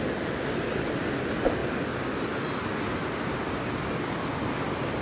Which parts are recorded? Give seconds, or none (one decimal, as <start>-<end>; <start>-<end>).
0.0-5.0